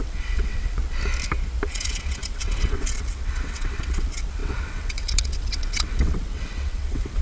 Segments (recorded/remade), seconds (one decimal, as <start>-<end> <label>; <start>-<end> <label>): 0.0-0.8 remade; 0.8-1.7 recorded; 1.7-7.2 remade